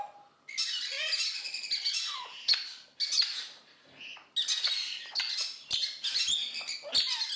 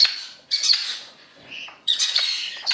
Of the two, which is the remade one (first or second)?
second